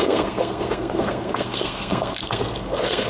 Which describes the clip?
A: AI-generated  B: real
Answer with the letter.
A